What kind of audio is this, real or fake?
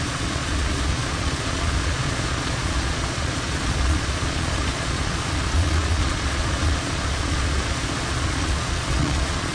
fake